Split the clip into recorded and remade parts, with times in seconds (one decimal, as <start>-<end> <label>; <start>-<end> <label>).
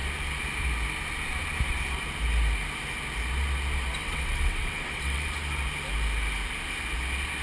0.0-4.0 recorded; 4.0-5.3 remade; 5.3-7.4 recorded